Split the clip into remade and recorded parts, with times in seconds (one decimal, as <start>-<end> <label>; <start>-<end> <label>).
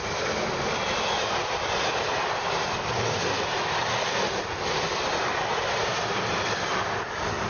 0.0-7.5 recorded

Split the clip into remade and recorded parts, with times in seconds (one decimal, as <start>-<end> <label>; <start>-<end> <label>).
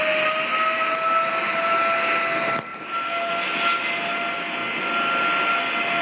0.0-6.0 recorded